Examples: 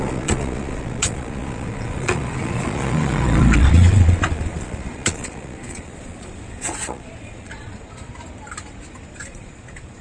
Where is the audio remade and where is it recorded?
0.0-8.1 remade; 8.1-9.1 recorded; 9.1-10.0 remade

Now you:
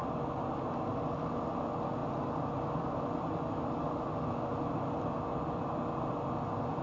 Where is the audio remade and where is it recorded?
0.0-6.8 recorded

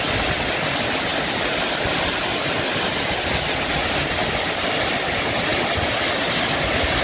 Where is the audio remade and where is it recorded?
0.0-7.0 recorded

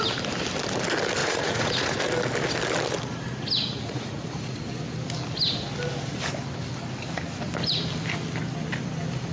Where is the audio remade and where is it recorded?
0.0-1.2 recorded; 1.2-2.0 remade; 2.0-3.6 recorded; 3.6-4.6 remade; 4.6-9.3 recorded